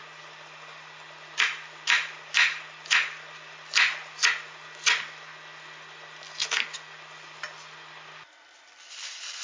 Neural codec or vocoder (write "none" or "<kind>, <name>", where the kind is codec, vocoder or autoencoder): none